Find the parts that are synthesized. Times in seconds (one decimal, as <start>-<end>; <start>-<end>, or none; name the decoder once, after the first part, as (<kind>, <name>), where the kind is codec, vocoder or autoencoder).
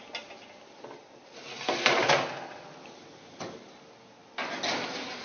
none